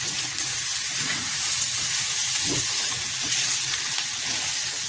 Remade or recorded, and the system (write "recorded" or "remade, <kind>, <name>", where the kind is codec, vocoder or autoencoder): remade, vocoder, Vocos